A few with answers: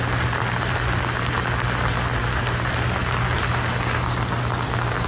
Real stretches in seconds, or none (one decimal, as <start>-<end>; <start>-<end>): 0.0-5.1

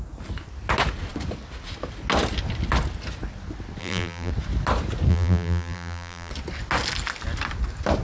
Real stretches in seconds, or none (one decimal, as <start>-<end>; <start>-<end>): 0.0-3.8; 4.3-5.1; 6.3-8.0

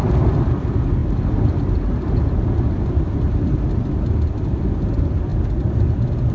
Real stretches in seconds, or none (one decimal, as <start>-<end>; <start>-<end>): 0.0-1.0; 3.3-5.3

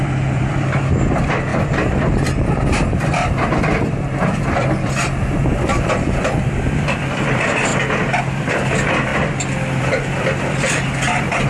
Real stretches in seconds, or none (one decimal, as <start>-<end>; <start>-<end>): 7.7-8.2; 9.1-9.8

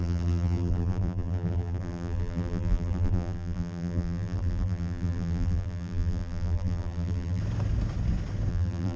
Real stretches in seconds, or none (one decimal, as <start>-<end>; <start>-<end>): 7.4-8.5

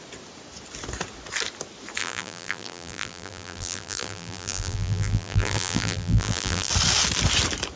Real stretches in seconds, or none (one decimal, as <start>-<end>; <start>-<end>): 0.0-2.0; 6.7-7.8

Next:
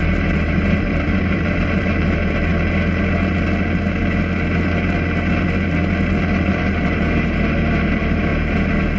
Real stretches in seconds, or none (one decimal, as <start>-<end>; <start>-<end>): 2.5-6.5; 8.3-9.0